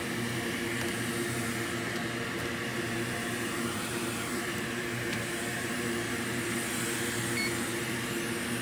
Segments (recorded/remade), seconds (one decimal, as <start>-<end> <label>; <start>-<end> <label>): 0.0-2.7 recorded; 2.7-6.5 remade; 6.5-8.6 recorded